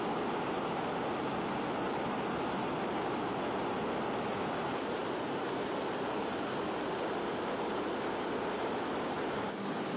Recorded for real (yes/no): yes